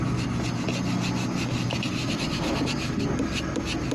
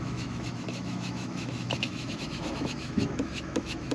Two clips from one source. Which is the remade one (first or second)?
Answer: second